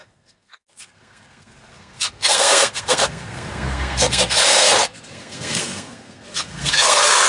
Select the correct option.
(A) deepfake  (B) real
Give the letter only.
A